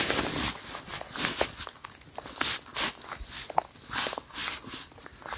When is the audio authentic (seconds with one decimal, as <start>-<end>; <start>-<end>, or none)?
0.0-5.4